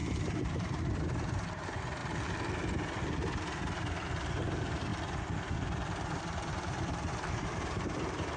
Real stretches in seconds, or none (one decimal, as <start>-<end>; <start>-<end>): 2.0-4.3; 4.9-6.2